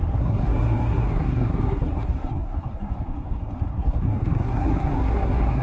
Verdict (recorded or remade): remade